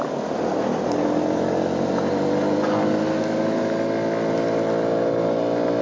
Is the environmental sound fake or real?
real